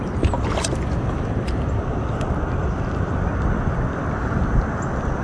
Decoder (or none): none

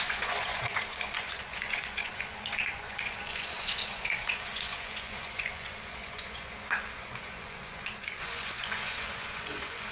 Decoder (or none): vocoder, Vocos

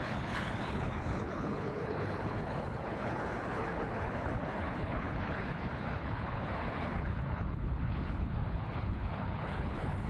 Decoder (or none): codec, HILCodec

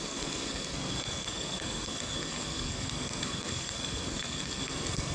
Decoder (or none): codec, SNAC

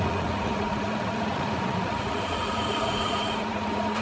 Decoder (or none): vocoder, Vocos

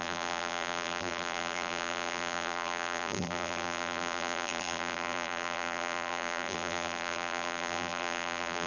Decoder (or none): vocoder, BigVGAN v2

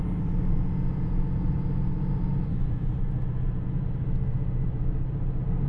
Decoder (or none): none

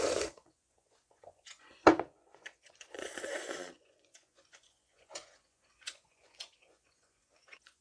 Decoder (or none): vocoder, Vocos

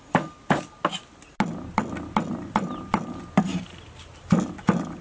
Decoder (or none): none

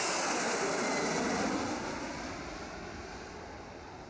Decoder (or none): none